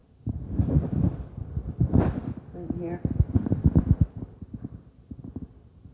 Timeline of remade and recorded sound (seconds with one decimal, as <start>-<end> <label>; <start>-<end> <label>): 0.0-5.9 recorded